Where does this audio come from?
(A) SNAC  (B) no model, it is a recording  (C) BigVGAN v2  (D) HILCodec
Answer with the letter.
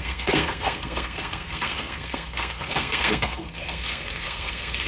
A